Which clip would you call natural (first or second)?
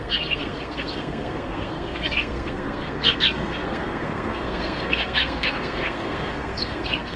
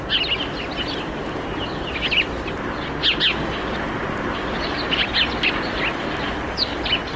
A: second